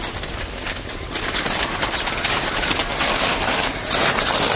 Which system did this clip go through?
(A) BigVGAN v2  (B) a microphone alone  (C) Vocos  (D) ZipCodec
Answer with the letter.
B